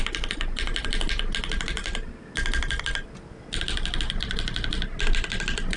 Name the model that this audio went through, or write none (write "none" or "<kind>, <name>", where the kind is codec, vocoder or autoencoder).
none